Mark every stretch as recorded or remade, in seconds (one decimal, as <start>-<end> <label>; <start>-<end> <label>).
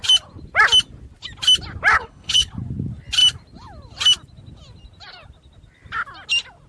0.0-1.9 recorded; 1.9-2.5 remade; 2.5-6.7 recorded